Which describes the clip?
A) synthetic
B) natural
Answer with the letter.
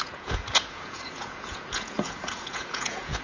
A